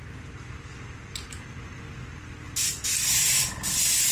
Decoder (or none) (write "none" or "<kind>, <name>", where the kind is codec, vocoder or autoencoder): none